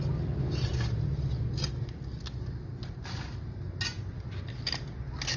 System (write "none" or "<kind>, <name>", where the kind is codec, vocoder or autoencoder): none